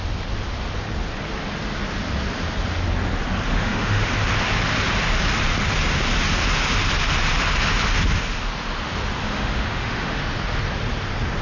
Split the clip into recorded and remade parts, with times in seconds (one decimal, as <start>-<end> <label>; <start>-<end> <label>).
0.0-3.5 recorded; 3.5-4.1 remade; 4.1-9.2 recorded; 9.2-10.2 remade; 10.2-11.4 recorded